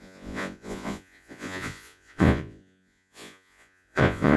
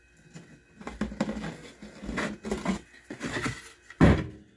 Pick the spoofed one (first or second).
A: first